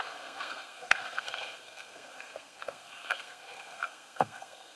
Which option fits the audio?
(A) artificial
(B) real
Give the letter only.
A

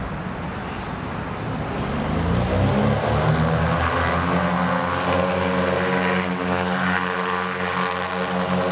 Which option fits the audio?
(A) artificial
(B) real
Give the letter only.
B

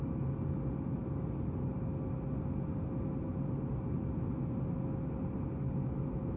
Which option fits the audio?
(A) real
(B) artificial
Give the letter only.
A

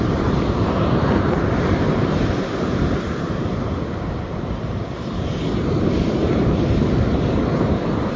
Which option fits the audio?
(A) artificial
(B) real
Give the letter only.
A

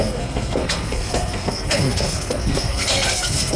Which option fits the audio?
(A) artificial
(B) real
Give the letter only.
A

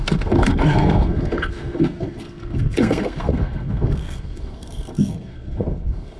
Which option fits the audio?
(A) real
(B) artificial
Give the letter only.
B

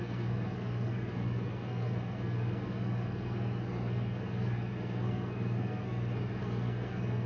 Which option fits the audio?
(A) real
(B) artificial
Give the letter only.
B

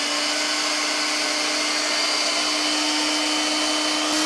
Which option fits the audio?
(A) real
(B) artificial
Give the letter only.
A